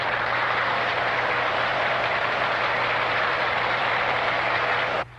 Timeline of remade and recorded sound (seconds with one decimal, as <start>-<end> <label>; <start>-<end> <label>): 0.0-1.7 recorded; 1.7-4.8 remade; 4.8-5.2 recorded